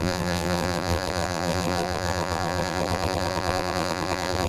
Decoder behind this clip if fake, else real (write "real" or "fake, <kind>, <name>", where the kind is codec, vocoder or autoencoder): fake, vocoder, BigVGAN v2